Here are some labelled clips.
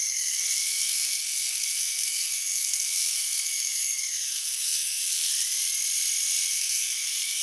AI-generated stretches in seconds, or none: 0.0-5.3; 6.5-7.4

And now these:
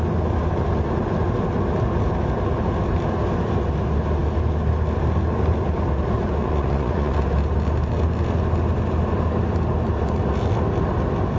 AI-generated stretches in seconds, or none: 6.4-7.2

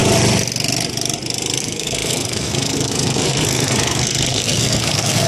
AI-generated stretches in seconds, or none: 1.6-5.3

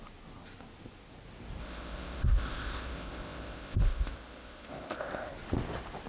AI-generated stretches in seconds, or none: 1.6-5.3